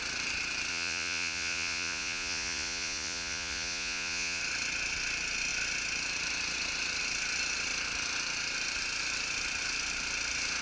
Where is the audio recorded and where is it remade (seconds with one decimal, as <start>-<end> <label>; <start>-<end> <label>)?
0.0-0.7 recorded; 0.7-4.4 remade; 4.4-10.6 recorded